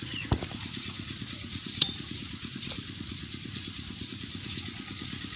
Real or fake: fake